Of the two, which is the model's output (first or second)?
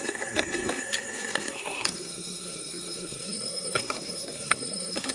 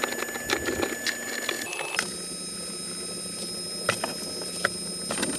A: first